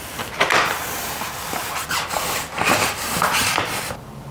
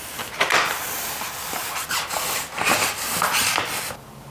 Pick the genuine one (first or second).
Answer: second